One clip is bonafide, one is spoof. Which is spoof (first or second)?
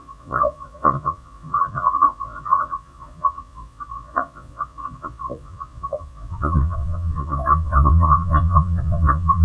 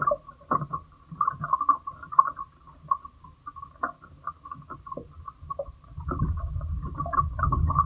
first